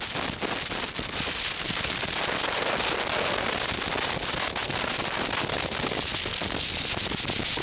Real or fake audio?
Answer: real